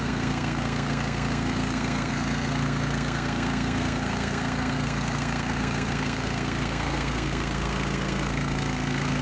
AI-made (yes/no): yes